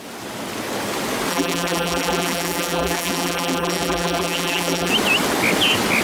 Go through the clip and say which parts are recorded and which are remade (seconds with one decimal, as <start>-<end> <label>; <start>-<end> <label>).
0.0-1.3 recorded; 1.3-4.9 remade; 4.9-6.0 recorded